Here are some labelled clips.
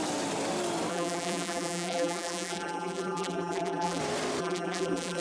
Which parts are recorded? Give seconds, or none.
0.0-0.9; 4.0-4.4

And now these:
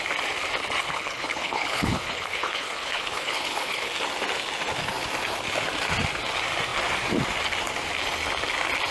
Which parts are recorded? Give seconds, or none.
0.0-0.8; 3.9-8.9

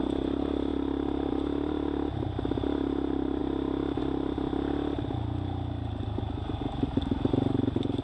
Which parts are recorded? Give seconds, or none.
0.0-8.0

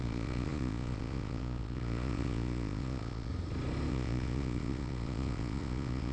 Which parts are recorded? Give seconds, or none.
3.3-3.9

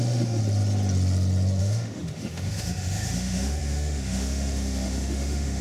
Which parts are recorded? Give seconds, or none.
0.4-1.6

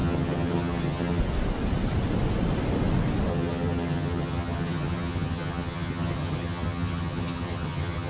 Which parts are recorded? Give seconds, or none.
1.2-3.3

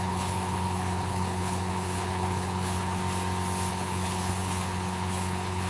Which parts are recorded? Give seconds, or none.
3.0-3.7